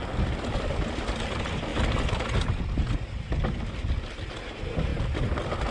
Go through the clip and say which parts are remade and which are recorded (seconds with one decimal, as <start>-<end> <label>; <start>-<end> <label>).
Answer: 0.0-5.7 recorded